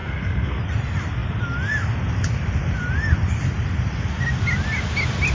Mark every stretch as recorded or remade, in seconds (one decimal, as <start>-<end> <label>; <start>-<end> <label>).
0.0-0.6 remade; 0.6-5.3 recorded

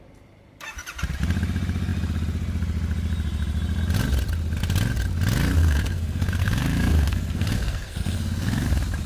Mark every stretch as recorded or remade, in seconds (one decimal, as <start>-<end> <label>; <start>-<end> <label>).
0.0-5.6 recorded; 5.6-8.7 remade; 8.7-9.1 recorded

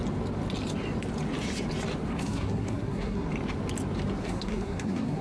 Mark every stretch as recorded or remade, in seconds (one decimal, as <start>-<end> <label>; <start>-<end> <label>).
0.0-2.1 recorded; 2.1-3.3 remade; 3.3-4.2 recorded; 4.2-5.2 remade